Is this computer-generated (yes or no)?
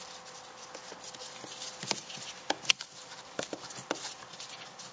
no